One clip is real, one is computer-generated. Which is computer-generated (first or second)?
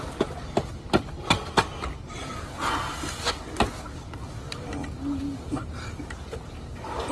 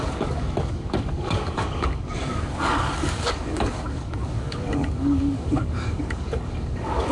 second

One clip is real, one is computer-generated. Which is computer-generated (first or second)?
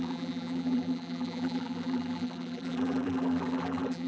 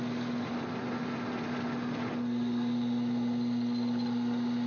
first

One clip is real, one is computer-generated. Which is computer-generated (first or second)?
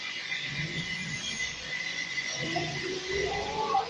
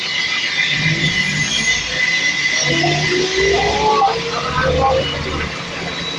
first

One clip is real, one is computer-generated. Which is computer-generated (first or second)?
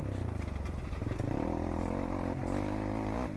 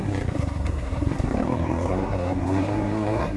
second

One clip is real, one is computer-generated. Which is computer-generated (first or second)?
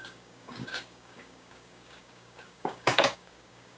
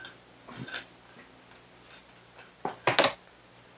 first